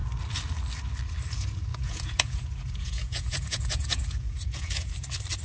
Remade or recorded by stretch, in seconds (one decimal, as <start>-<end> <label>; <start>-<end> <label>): 0.0-1.7 recorded; 1.7-4.9 remade; 4.9-5.4 recorded